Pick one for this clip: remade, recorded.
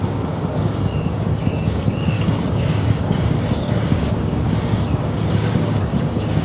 remade